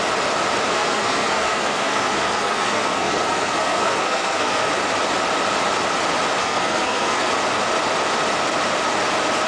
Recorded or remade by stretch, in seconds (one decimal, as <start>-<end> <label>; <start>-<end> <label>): 0.0-0.7 recorded; 0.7-4.7 remade; 4.7-6.4 recorded; 6.4-7.3 remade; 7.3-9.5 recorded